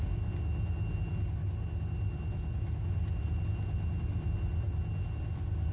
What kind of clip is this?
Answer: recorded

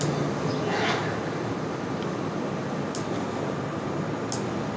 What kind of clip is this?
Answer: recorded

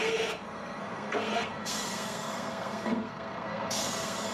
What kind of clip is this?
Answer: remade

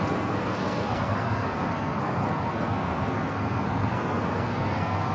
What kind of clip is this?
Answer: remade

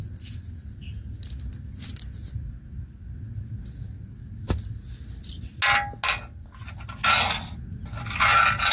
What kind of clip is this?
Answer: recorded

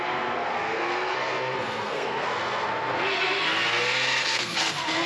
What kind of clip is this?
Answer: remade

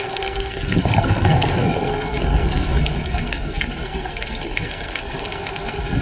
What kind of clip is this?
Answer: remade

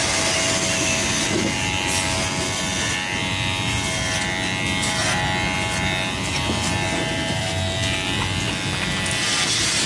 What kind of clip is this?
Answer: recorded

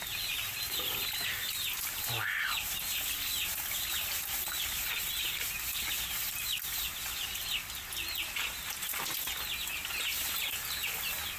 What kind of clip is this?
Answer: recorded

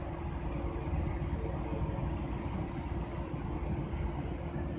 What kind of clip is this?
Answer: recorded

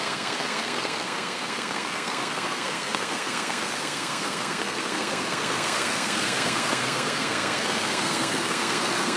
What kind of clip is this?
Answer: remade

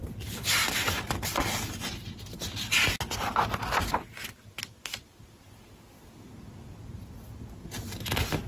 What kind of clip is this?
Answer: recorded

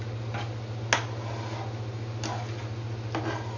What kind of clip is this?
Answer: recorded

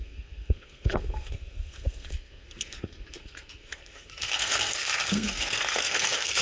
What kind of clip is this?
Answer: remade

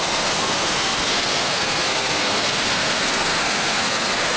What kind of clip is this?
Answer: remade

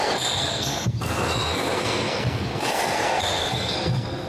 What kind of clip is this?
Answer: remade